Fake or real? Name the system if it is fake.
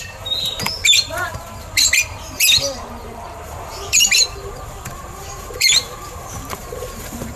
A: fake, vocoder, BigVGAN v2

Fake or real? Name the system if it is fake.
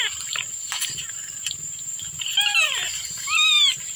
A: fake, vocoder, BigVGAN v2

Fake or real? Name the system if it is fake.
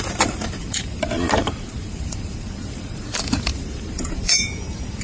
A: fake, vocoder, BigVGAN v2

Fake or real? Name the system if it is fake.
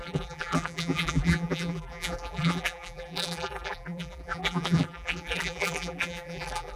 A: fake, vocoder, BigVGAN v2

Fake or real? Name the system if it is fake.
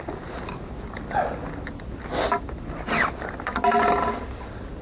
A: real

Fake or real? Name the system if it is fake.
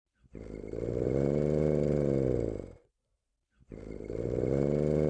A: fake, vocoder, BigVGAN v2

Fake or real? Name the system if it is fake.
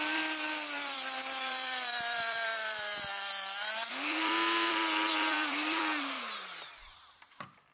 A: fake, vocoder, BigVGAN v2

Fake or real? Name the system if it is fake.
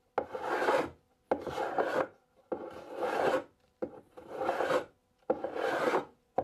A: real